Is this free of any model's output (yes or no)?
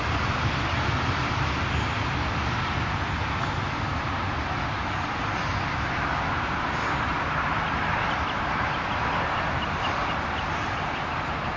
yes